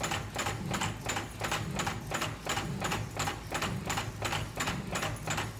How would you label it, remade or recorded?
recorded